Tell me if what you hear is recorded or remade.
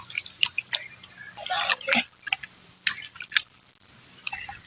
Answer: recorded